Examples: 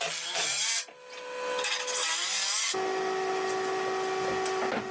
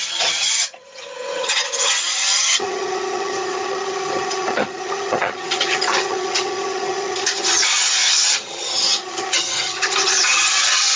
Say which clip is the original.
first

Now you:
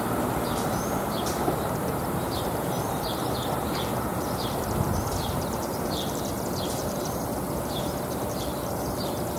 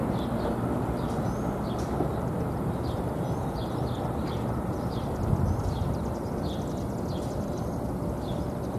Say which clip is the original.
second